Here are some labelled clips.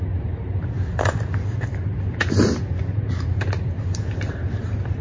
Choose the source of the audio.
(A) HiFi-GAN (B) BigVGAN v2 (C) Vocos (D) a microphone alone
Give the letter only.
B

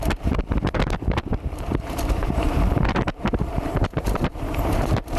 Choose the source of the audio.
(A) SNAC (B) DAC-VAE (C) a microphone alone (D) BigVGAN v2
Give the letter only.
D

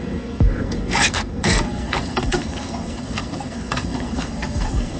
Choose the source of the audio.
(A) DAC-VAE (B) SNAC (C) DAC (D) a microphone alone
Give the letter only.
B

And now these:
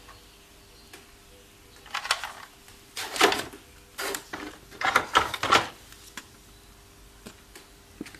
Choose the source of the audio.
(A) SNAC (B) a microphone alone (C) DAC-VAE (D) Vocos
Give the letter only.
B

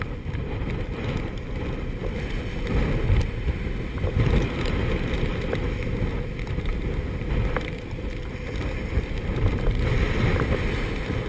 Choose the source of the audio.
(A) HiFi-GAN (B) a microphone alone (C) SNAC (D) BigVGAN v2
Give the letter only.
B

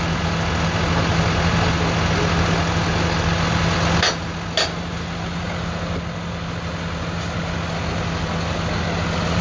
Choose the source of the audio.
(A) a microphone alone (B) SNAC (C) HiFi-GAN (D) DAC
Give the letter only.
A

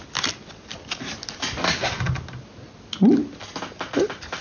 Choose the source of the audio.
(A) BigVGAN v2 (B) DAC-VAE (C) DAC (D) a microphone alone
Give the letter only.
D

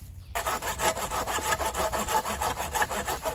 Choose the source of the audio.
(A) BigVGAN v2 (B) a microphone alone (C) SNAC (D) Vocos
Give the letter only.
B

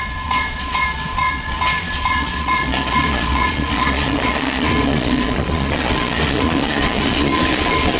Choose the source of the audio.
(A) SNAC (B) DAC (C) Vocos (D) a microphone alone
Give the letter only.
C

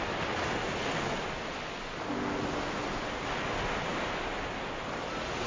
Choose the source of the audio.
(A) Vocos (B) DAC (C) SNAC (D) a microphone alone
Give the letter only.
D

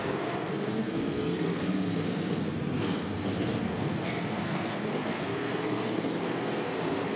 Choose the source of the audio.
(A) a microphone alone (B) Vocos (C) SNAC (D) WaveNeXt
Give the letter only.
C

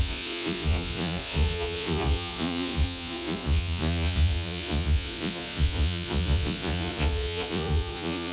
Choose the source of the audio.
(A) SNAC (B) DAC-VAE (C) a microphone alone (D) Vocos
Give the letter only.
D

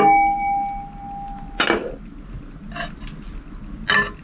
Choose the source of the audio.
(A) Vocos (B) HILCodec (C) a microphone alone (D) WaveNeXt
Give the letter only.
C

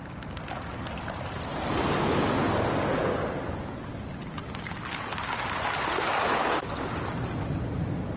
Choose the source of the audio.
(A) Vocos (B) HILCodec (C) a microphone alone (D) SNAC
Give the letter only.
C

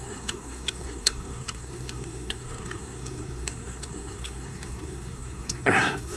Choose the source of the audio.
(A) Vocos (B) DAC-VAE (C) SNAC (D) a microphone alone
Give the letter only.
C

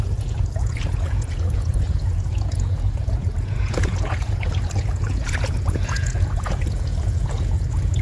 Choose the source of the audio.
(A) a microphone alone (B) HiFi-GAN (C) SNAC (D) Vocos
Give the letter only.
D